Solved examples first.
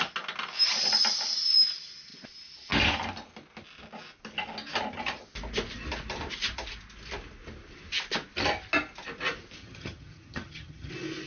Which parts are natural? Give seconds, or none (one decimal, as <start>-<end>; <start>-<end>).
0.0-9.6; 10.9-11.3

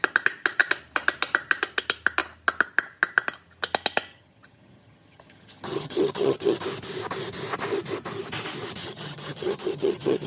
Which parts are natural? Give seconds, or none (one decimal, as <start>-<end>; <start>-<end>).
0.0-4.1; 6.6-8.8

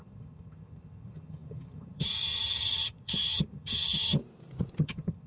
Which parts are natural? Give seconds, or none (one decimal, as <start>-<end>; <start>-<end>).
4.2-4.8

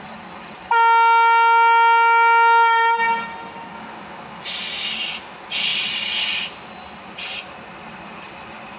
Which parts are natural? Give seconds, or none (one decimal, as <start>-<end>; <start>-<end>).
0.0-8.8

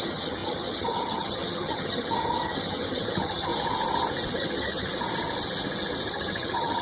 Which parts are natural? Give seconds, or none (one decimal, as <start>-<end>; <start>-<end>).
3.5-4.3; 4.9-6.1

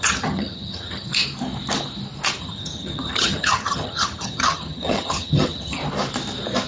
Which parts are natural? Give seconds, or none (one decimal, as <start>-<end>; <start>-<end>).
1.1-2.4; 5.8-6.7